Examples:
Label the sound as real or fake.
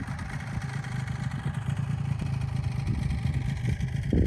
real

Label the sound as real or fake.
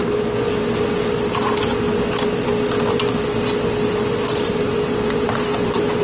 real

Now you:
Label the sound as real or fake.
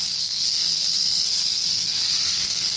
fake